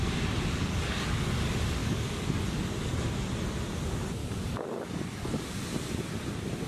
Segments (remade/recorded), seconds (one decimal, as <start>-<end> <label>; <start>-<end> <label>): 0.0-0.5 recorded; 0.5-1.4 remade; 1.4-1.8 recorded; 1.8-2.9 remade; 2.9-4.2 recorded; 4.2-5.4 remade; 5.4-6.7 recorded